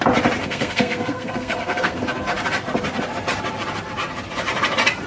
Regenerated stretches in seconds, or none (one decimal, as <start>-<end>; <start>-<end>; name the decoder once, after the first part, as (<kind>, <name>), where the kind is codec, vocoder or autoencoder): 0.4-2.0 (codec, SNAC)